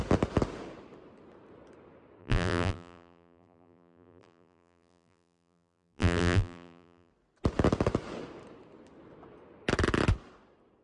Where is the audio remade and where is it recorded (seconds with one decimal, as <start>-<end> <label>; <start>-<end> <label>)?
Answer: 0.0-2.2 recorded; 2.2-7.1 remade; 7.1-10.8 recorded